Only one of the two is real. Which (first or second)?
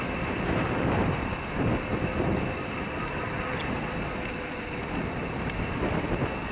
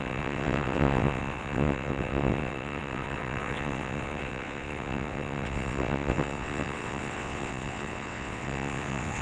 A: first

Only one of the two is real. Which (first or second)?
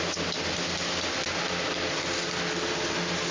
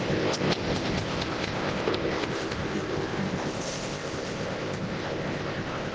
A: first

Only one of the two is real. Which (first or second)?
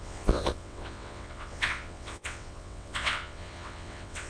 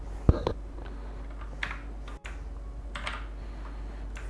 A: second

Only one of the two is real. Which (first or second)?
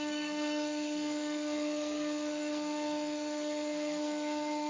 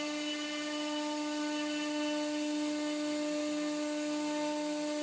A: second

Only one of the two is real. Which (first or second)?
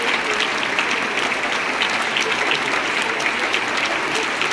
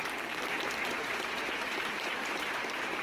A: first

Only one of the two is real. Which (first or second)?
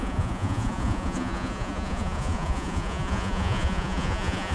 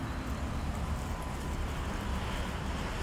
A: second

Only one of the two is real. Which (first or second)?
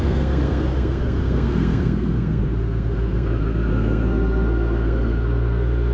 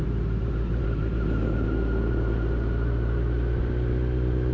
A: second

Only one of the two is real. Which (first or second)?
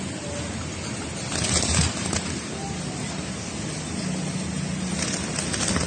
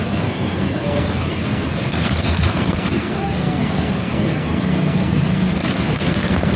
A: first